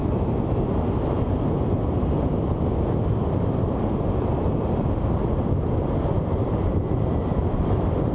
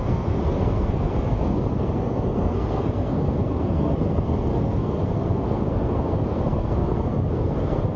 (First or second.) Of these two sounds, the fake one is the second